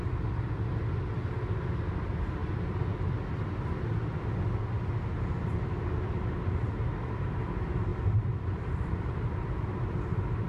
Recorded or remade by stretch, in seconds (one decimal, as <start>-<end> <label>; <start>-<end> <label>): 0.0-7.9 recorded; 7.9-10.0 remade; 10.0-10.5 recorded